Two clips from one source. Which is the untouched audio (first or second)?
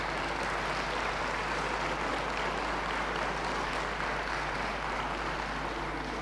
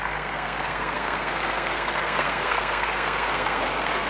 first